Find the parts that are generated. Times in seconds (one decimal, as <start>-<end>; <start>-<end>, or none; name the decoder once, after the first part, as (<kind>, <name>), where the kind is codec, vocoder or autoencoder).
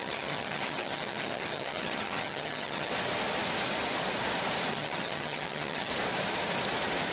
0.0-2.9 (vocoder, HiFi-GAN); 4.7-5.9